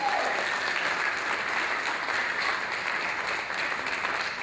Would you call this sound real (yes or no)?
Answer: yes